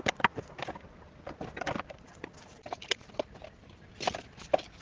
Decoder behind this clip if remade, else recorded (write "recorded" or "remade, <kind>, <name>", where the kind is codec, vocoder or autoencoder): recorded